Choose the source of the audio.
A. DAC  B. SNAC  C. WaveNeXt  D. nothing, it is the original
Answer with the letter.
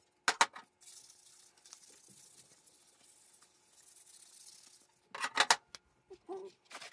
D